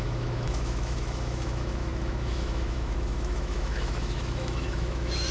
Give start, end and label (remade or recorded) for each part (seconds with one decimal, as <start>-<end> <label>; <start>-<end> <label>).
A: 0.0-5.3 remade